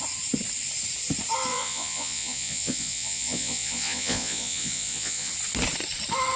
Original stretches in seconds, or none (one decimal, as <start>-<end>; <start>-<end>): 0.0-1.5; 5.3-6.4